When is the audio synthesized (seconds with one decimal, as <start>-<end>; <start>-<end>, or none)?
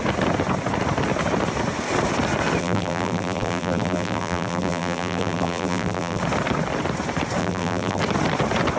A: 2.6-6.2; 7.4-8.0